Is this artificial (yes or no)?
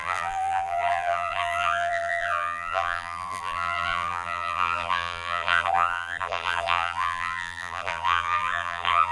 yes